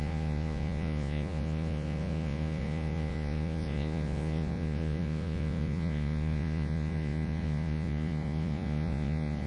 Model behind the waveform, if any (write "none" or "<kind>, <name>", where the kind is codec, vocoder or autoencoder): vocoder, Vocos